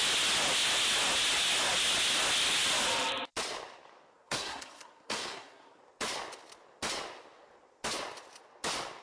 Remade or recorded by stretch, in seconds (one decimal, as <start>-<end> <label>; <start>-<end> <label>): 0.0-4.1 recorded; 4.1-5.8 remade; 5.8-9.0 recorded